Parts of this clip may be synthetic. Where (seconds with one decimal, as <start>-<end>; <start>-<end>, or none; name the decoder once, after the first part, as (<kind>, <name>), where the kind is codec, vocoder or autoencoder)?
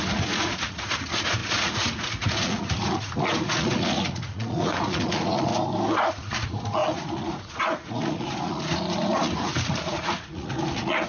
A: 0.0-5.5 (vocoder, Vocos); 6.1-11.1